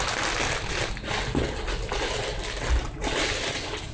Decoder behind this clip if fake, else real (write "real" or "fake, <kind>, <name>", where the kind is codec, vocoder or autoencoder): real